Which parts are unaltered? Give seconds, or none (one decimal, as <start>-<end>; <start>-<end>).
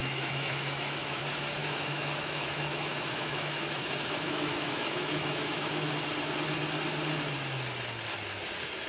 1.2-1.6; 5.9-8.9